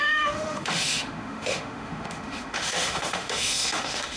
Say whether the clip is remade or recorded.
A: remade